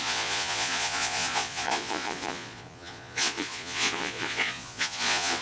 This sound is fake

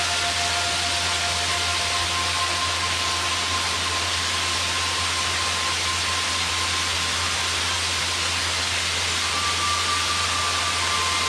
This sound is real